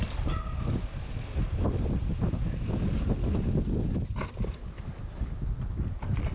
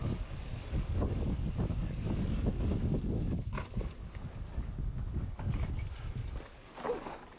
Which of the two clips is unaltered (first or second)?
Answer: first